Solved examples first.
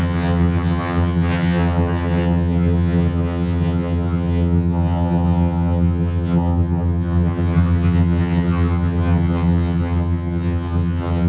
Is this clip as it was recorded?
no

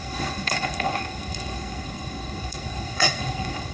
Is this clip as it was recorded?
no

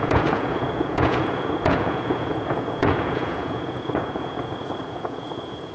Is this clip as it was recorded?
no